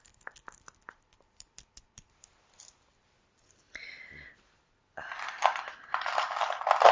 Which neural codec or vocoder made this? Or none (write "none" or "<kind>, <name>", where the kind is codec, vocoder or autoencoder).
none